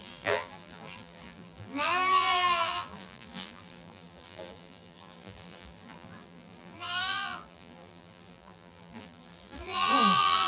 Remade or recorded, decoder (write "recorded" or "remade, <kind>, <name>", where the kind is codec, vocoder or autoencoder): remade, vocoder, BigVGAN v2